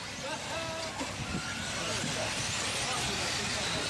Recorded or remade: recorded